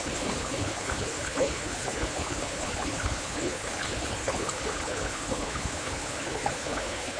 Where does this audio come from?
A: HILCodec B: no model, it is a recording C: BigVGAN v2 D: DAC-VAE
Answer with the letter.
A